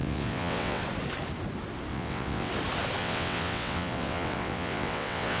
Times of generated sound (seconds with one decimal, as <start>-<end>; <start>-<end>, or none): 0.0-0.8; 1.9-2.5; 3.0-5.4